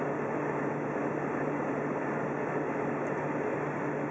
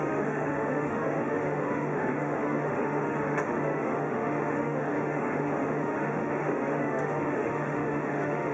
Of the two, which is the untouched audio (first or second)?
first